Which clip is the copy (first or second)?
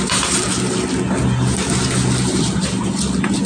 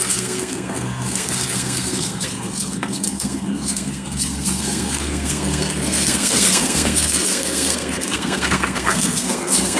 second